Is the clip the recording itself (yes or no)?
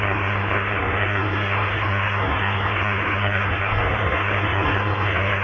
no